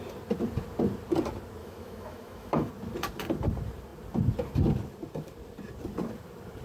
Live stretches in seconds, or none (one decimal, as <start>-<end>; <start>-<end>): 0.0-1.6; 2.7-6.6